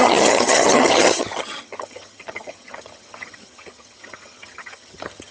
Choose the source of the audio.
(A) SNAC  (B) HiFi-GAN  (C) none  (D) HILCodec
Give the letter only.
B